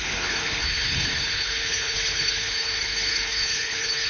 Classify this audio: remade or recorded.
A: remade